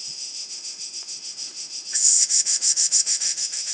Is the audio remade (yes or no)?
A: yes